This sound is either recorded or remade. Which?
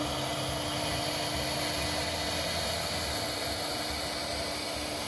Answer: recorded